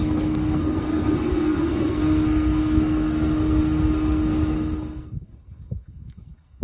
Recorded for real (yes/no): no